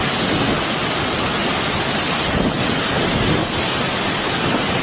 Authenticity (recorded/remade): recorded